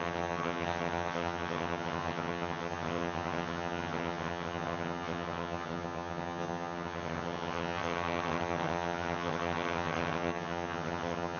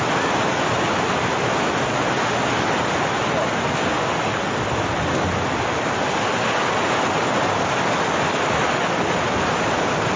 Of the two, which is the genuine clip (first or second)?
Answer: second